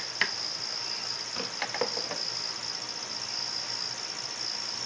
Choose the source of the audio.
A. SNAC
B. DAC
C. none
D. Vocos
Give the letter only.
C